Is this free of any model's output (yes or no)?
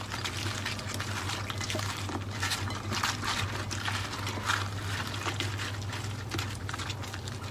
yes